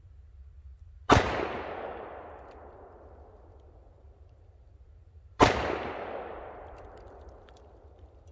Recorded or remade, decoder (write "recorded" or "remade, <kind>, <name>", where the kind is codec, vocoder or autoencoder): remade, vocoder, BigVGAN v2